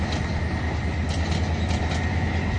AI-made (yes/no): no